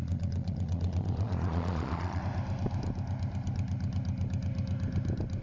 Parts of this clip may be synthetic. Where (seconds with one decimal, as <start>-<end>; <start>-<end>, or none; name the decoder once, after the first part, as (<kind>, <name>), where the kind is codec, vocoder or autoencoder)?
0.0-2.2 (vocoder, Vocos)